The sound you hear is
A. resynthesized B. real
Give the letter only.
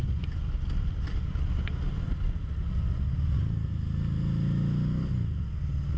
B